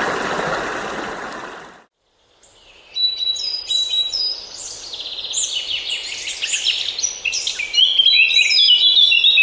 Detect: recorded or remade recorded